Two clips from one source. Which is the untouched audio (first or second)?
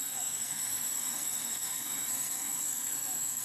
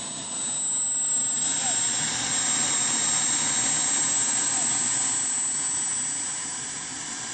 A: second